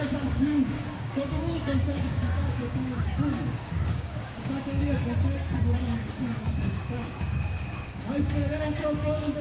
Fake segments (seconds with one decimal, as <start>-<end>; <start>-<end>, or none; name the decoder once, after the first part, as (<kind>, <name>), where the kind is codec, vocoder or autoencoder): 0.0-5.0 (codec, DAC); 5.8-9.4